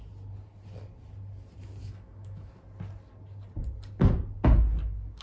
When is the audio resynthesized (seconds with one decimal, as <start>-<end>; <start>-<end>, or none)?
1.8-2.5